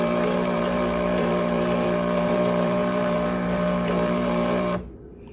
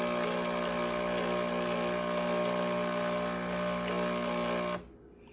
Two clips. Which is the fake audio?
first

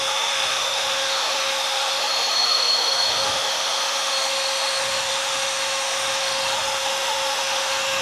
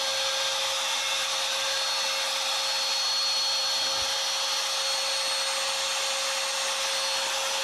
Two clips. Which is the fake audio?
first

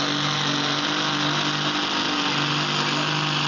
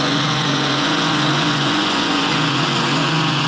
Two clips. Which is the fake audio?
second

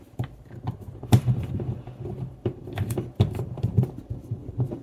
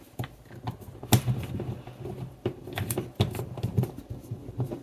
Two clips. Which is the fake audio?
first